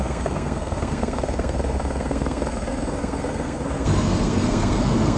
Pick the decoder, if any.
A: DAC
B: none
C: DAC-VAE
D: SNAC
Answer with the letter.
D